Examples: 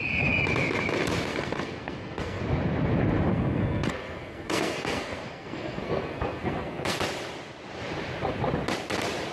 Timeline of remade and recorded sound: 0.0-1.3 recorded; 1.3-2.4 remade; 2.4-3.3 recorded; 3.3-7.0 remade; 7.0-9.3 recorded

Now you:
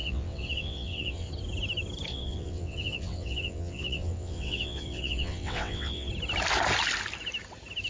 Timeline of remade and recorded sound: 0.0-1.3 remade; 1.3-2.1 recorded; 2.1-6.1 remade; 6.1-7.9 recorded

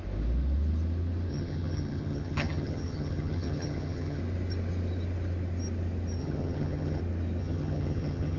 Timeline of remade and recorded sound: 0.0-1.3 recorded; 1.3-4.2 remade; 4.2-6.2 recorded; 6.2-7.0 remade; 7.0-7.4 recorded; 7.4-8.4 remade

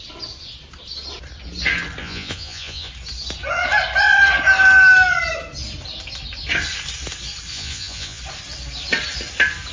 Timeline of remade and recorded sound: 0.0-2.0 recorded; 2.0-2.9 remade; 2.9-7.5 recorded; 7.5-8.2 remade; 8.2-9.7 recorded

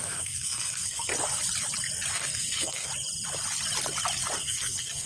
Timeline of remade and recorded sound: 0.0-1.1 remade; 1.1-2.1 recorded; 2.1-2.9 remade; 2.9-4.4 recorded; 4.4-5.1 remade